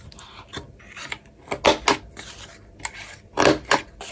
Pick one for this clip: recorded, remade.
recorded